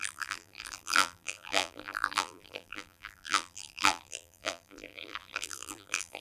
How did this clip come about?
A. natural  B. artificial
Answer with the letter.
B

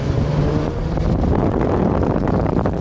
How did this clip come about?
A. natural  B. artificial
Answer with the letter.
B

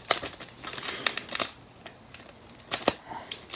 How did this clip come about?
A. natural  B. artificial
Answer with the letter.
A